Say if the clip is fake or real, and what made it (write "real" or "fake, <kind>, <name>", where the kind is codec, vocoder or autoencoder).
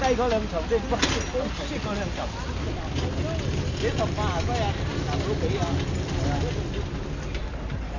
real